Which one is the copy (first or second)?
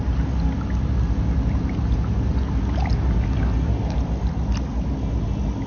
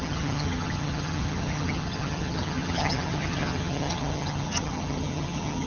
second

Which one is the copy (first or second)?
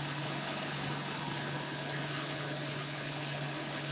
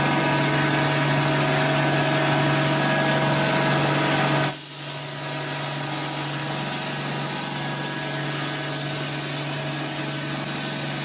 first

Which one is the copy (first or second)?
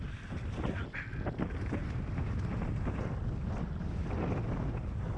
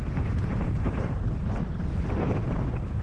second